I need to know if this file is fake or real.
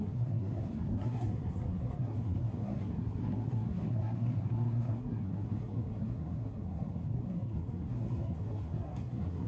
fake